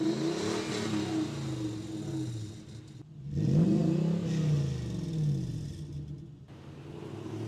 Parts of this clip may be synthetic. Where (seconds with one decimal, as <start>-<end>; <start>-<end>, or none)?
none